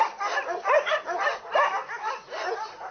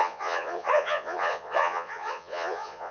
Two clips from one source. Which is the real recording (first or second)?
first